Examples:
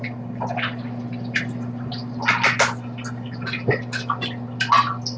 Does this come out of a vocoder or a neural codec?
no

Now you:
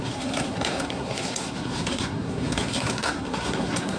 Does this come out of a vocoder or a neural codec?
yes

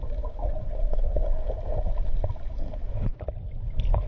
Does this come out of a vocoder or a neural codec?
no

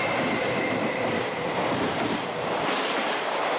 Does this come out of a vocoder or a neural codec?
no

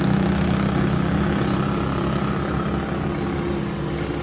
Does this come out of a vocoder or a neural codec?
no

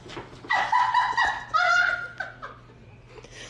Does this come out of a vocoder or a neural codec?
no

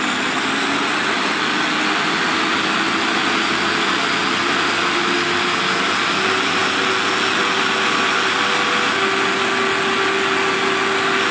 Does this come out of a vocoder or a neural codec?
no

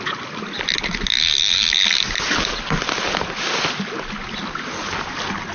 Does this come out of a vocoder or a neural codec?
no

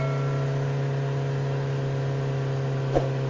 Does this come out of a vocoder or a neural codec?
no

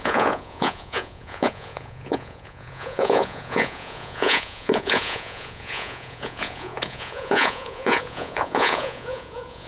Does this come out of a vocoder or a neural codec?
yes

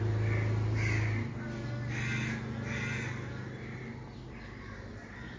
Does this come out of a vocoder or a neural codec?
no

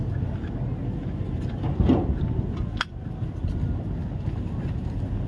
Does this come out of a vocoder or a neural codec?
no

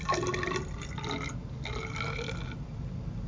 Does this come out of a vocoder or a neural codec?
no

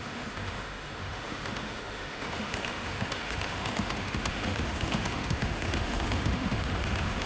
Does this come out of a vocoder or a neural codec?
yes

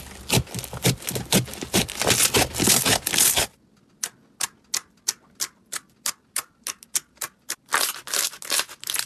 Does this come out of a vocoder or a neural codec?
no